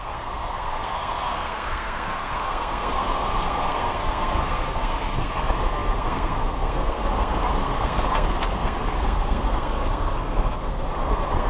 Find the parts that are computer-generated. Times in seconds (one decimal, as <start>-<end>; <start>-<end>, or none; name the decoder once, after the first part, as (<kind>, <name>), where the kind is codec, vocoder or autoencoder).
0.0-11.5 (codec, SNAC)